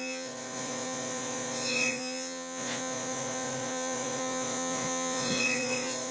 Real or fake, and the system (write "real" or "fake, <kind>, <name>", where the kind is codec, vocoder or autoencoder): fake, vocoder, Vocos